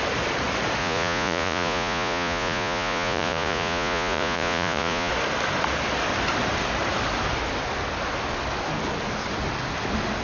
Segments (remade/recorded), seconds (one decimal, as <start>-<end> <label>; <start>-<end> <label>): 0.0-0.8 recorded; 0.8-5.1 remade; 5.1-10.2 recorded